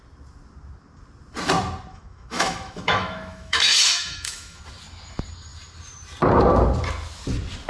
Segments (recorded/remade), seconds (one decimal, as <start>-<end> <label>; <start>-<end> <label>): 0.0-1.9 recorded; 1.9-4.6 remade; 4.6-7.7 recorded

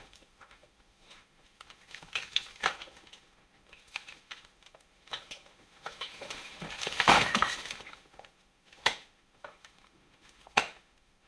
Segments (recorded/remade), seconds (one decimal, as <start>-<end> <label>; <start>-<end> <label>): 0.0-11.3 remade

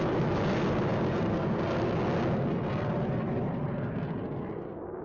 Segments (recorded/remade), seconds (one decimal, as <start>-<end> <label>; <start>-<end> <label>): 0.0-5.0 recorded

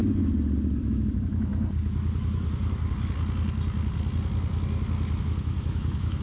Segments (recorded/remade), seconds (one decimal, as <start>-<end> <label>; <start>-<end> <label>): 0.0-0.8 recorded; 0.8-1.5 remade; 1.5-5.2 recorded; 5.2-6.2 remade

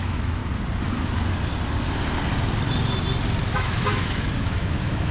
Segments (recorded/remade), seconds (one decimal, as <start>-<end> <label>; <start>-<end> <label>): 0.0-0.4 remade; 0.4-3.5 recorded; 3.5-5.1 remade

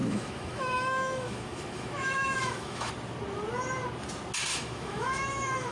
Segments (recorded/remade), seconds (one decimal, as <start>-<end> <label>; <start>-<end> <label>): 0.0-2.9 remade; 2.9-4.5 recorded; 4.5-5.7 remade

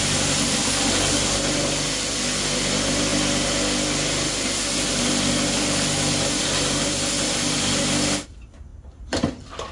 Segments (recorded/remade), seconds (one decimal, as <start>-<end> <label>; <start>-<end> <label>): 0.0-9.7 recorded